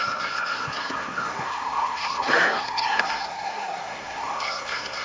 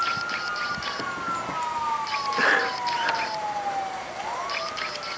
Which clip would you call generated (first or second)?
first